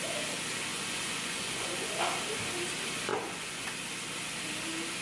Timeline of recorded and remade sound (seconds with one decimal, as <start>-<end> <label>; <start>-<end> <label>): 0.0-0.7 recorded; 0.7-1.9 remade; 1.9-3.1 recorded; 3.1-3.7 remade; 3.7-5.0 recorded